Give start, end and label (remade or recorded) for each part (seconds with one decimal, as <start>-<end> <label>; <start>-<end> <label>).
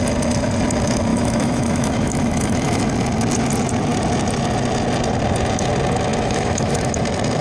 0.0-1.1 recorded; 1.1-2.8 remade; 2.8-6.1 recorded; 6.1-6.9 remade; 6.9-7.4 recorded